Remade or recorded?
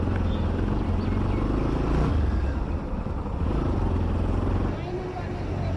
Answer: recorded